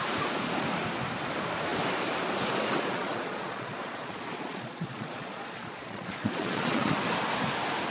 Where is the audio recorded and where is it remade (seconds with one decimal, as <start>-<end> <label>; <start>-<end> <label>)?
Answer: 0.0-2.9 recorded; 2.9-6.9 remade; 6.9-7.9 recorded